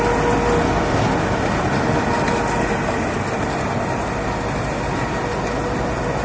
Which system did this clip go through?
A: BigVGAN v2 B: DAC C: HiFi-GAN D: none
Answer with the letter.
D